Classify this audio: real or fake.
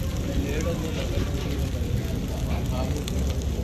real